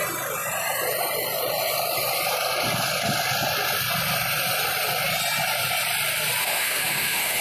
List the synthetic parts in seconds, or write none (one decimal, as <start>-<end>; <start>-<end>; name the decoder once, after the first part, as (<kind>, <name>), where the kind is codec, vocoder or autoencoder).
6.4-7.4 (autoencoder, DAC-VAE)